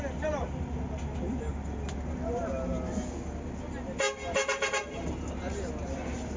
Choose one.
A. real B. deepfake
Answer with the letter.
A